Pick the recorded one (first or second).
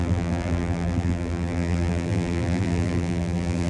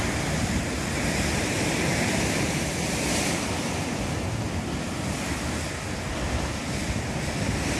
second